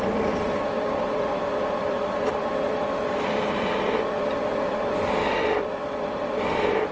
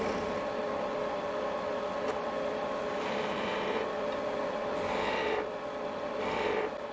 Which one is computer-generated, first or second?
first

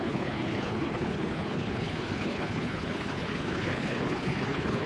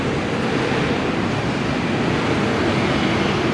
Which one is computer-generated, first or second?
first